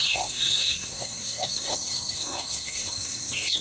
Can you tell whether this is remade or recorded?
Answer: remade